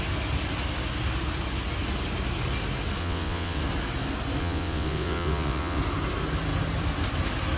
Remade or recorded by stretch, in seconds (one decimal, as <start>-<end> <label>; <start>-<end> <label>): 0.0-3.0 recorded; 3.0-3.6 remade; 3.6-4.4 recorded; 4.4-5.8 remade; 5.8-7.6 recorded